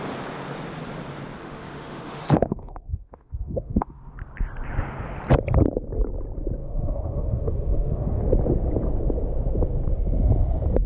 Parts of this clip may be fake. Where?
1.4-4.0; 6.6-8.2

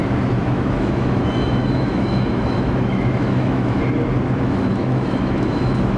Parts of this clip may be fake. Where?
0.0-3.8; 4.4-6.0

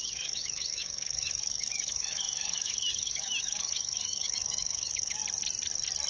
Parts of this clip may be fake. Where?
0.0-5.2

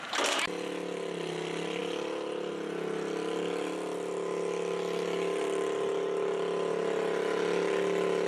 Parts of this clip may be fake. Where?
none

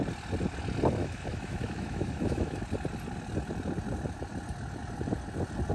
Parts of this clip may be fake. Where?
1.0-2.6

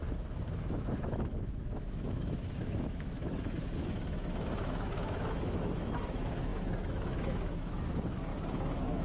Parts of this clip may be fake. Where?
0.6-8.3

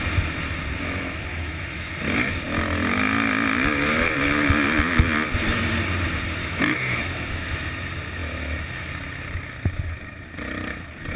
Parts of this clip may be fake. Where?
1.3-1.9; 6.4-7.7